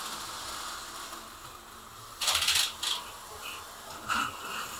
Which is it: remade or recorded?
recorded